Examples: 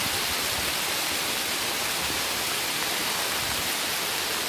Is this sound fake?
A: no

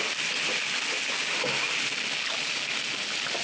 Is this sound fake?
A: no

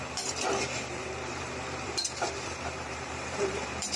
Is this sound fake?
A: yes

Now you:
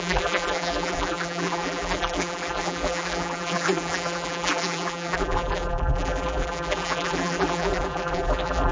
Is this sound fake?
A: yes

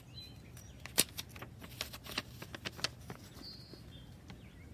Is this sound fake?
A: no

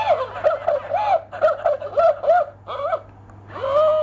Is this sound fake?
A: no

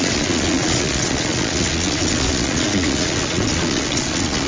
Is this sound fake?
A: yes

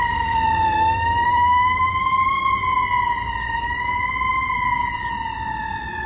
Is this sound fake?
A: yes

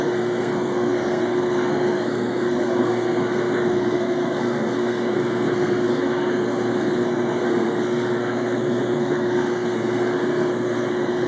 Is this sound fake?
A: yes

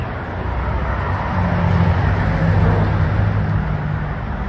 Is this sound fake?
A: no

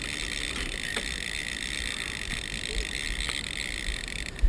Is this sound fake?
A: no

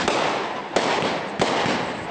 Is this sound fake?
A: no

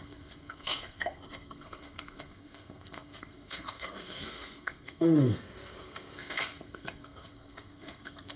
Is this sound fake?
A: yes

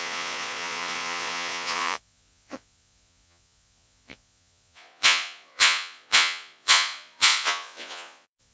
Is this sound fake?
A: yes